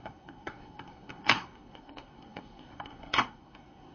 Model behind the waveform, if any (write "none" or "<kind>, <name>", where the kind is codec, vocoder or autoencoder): codec, SNAC